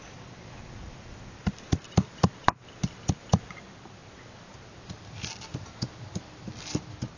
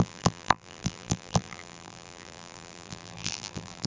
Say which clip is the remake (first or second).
second